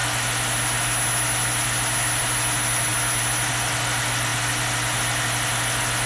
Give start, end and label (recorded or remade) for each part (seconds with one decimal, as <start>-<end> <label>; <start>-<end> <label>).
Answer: 0.0-6.1 recorded